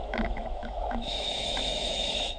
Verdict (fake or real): fake